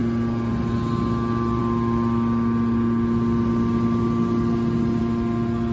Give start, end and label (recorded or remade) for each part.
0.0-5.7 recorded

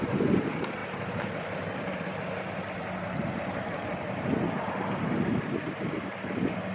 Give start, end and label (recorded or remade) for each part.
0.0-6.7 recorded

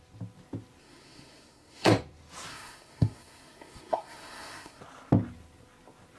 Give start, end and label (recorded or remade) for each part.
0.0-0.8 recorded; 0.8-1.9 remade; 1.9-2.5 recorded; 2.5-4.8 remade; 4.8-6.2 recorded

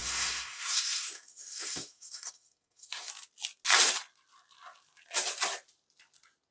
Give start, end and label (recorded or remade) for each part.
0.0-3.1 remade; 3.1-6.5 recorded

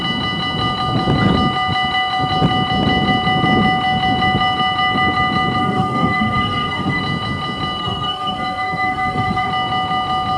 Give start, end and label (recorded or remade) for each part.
0.0-5.6 recorded; 5.6-7.0 remade; 7.0-7.8 recorded; 7.8-9.5 remade; 9.5-10.4 recorded